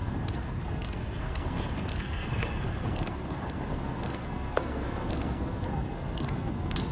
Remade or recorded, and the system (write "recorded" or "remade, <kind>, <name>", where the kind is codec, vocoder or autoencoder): remade, codec, SNAC